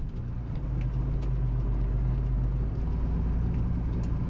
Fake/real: real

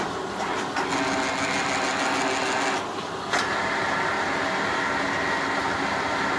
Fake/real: real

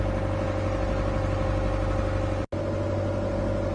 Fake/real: real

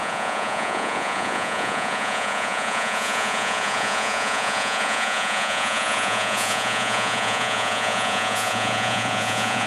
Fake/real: fake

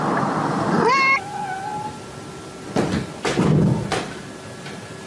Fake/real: real